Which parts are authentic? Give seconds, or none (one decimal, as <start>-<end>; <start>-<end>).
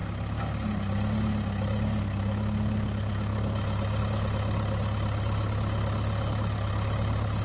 0.0-7.4